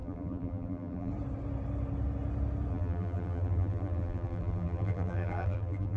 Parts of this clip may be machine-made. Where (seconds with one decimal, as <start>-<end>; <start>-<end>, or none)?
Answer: 0.0-1.1; 2.7-6.0